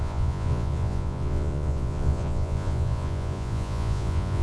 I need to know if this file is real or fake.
fake